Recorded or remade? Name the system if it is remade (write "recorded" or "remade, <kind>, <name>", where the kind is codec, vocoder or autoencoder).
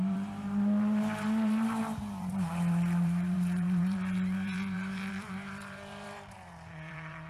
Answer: remade, vocoder, BigVGAN v2